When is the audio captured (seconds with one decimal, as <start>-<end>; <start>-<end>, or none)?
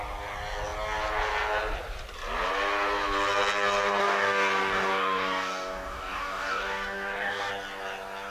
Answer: 0.0-4.0; 7.5-8.3